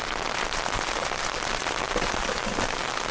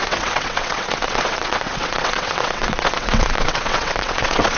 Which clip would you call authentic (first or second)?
first